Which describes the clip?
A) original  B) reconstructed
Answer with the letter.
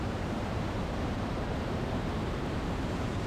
B